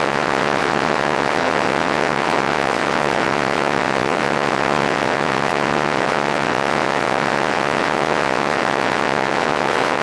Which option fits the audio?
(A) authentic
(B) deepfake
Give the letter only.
B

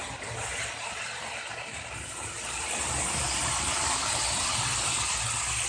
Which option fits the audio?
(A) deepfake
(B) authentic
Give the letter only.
B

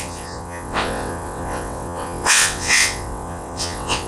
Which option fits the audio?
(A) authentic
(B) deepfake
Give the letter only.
B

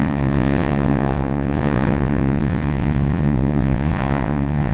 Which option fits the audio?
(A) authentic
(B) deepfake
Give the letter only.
B